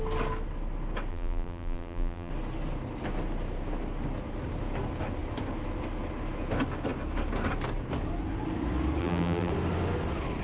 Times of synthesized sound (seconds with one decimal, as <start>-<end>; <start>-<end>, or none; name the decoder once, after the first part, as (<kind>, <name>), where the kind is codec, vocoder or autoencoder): 1.1-2.3 (vocoder, BigVGAN v2); 9.0-9.5